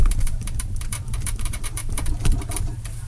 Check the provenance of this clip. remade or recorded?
remade